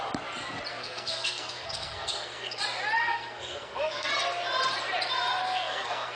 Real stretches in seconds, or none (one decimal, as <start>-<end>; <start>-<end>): 0.0-0.7; 2.6-3.0; 4.1-5.4